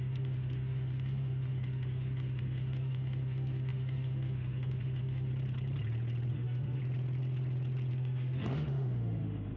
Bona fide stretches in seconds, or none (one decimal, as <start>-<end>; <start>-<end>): 5.3-6.3; 6.8-7.9